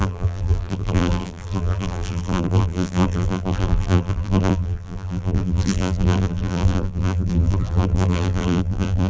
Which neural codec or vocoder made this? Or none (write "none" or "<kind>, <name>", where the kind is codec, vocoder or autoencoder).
vocoder, BigVGAN v2